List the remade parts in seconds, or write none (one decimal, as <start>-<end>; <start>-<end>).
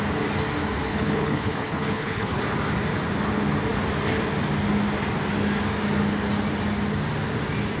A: 0.9-2.4